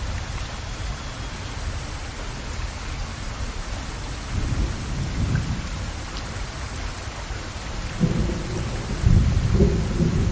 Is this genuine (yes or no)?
yes